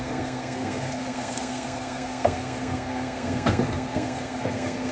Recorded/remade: remade